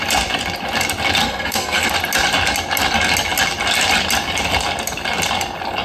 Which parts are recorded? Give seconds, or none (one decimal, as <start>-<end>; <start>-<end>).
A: 0.0-1.2; 1.9-5.8